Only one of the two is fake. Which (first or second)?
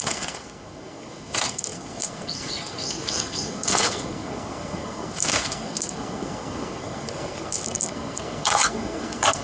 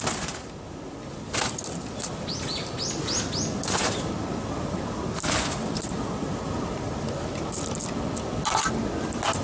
first